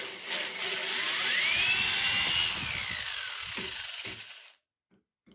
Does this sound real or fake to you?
real